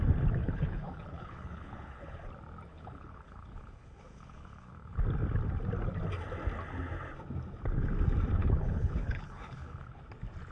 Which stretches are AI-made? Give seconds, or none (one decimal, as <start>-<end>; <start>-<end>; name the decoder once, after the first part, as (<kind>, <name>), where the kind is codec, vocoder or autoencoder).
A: 0.4-2.2 (codec, HILCodec); 2.7-5.0; 8.4-10.0